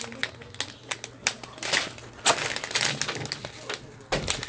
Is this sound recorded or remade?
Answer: recorded